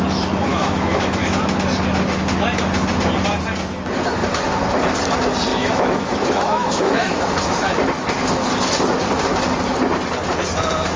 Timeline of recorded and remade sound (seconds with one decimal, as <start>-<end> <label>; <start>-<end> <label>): 0.0-0.5 recorded; 0.5-1.4 remade; 1.4-5.5 recorded; 5.5-7.2 remade; 7.2-11.0 recorded